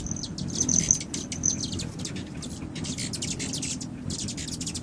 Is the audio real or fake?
real